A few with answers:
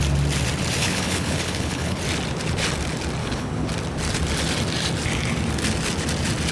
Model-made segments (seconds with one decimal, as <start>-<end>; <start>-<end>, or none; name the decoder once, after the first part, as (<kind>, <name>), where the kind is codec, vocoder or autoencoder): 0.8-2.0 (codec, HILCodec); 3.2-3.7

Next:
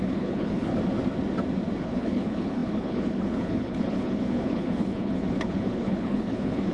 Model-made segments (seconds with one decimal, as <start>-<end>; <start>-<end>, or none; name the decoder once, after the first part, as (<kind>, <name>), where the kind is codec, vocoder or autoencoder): 0.0-0.7 (codec, HILCodec); 1.8-6.7

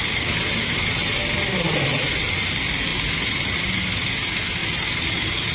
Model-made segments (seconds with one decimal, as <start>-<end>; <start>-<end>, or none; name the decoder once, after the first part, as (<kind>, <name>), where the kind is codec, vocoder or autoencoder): none